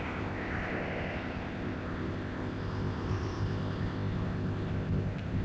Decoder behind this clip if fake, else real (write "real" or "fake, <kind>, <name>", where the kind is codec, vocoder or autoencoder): fake, codec, ZipCodec